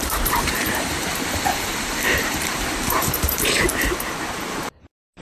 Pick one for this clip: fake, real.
fake